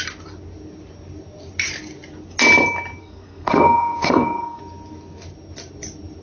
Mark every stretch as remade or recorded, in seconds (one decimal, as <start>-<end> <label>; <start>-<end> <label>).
0.0-3.0 recorded; 3.0-4.6 remade; 4.6-6.2 recorded